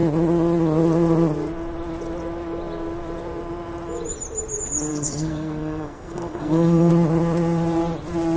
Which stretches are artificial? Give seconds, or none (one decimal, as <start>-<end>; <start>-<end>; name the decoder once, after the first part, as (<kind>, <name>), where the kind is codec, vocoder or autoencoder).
4.9-6.9 (codec, SNAC)